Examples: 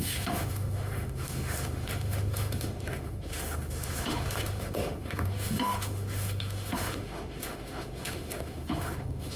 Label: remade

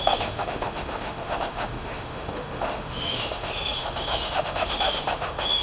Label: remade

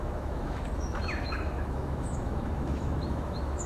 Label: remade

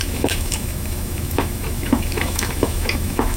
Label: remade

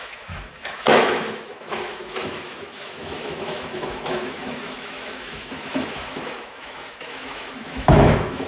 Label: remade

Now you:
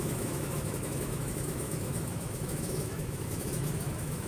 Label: remade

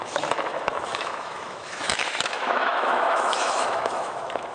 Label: remade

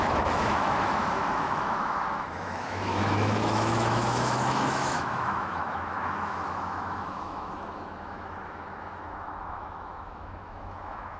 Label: remade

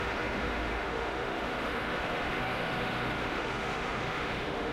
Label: remade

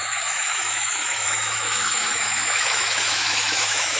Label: remade